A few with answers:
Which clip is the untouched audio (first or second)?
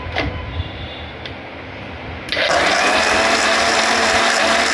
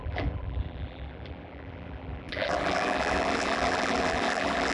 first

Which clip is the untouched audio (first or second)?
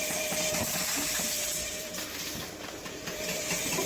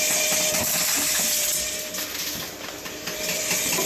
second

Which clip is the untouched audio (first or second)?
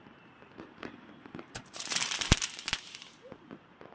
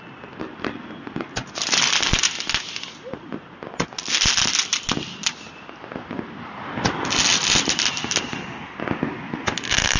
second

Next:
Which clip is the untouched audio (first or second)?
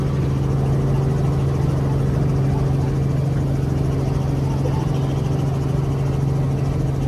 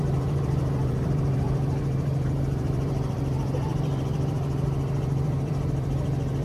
first